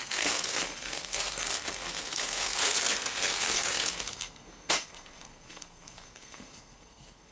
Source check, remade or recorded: remade